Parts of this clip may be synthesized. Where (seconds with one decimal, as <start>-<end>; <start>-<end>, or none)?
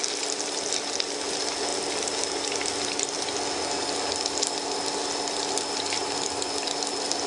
none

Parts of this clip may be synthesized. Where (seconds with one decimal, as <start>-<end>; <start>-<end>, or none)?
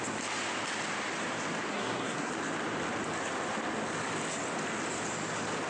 1.7-2.3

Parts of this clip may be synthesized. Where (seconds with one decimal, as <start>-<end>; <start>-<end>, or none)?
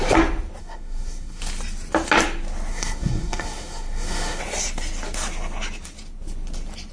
0.6-1.4; 2.7-4.4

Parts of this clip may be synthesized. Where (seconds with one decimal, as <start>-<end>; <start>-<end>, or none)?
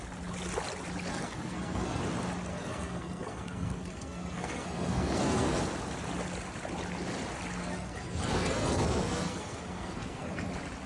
1.1-2.0; 2.5-5.6; 7.6-10.5